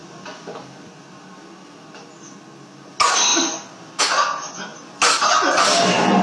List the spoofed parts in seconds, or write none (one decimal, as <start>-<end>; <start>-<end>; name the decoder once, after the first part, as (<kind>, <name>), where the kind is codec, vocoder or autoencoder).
none